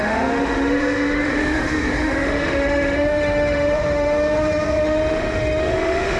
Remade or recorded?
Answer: remade